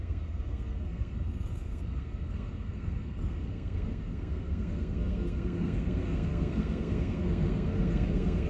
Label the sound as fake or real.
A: fake